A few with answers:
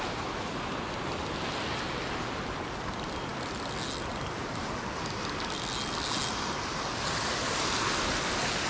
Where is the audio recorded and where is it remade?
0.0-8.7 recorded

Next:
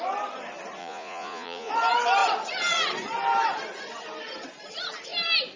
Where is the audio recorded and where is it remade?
0.0-0.8 recorded; 0.8-1.7 remade; 1.7-5.6 recorded

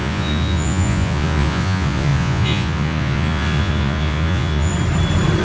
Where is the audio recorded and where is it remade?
0.0-4.7 remade; 4.7-5.4 recorded

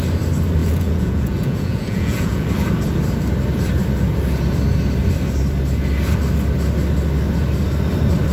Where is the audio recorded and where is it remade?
0.0-0.6 recorded; 0.6-2.5 remade; 2.5-8.3 recorded

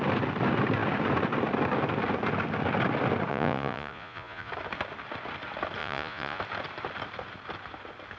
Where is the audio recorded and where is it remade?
0.0-3.3 recorded; 3.3-4.5 remade; 4.5-5.8 recorded; 5.8-6.4 remade; 6.4-8.2 recorded

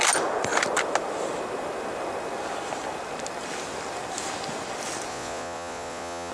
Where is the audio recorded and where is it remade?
0.0-5.1 recorded; 5.1-6.3 remade